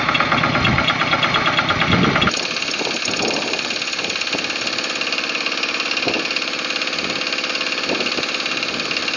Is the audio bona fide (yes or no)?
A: yes